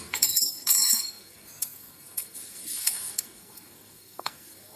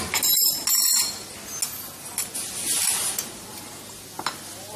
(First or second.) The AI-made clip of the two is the first